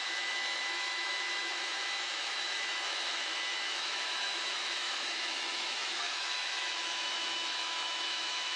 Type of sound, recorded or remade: remade